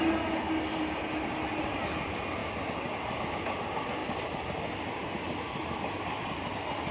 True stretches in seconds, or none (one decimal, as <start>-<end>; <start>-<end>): 0.0-6.9